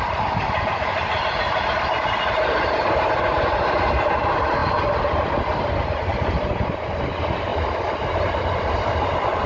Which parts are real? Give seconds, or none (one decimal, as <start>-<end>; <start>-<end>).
7.5-9.5